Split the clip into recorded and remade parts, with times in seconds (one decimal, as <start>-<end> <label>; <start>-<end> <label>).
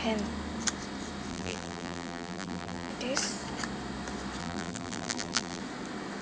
0.0-1.3 recorded; 1.3-2.9 remade; 2.9-4.4 recorded; 4.4-5.6 remade; 5.6-6.2 recorded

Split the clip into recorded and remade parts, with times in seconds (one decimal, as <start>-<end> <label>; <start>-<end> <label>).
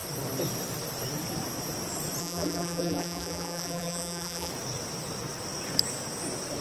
0.0-2.2 recorded; 2.2-4.5 remade; 4.5-6.6 recorded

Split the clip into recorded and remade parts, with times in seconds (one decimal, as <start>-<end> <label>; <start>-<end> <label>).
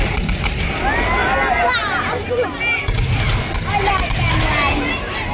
0.0-5.3 recorded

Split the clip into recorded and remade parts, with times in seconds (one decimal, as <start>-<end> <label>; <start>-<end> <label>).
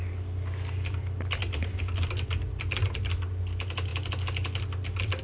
0.0-5.2 recorded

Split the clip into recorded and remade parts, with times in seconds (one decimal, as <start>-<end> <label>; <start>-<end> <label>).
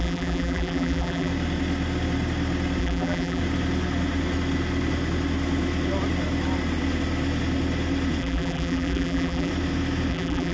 0.0-1.3 remade; 1.3-2.8 recorded; 2.8-3.4 remade; 3.4-8.2 recorded; 8.2-9.5 remade; 9.5-10.1 recorded; 10.1-10.5 remade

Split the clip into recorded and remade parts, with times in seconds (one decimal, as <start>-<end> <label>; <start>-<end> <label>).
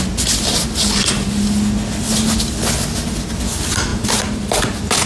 0.0-3.9 recorded; 3.9-5.1 remade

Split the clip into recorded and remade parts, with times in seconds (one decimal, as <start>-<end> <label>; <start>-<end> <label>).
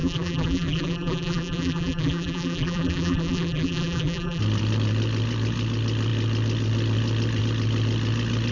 0.0-4.4 remade; 4.4-8.5 recorded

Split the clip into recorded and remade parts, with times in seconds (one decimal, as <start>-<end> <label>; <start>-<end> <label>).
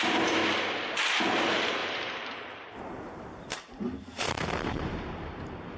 0.0-0.4 remade; 0.4-1.3 recorded; 1.3-5.8 remade